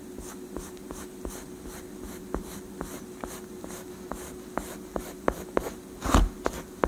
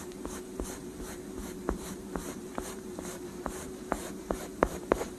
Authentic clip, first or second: first